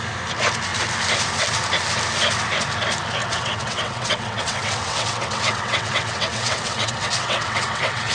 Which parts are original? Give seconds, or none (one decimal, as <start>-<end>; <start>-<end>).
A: 0.0-3.2